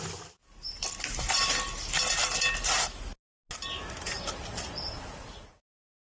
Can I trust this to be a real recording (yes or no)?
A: yes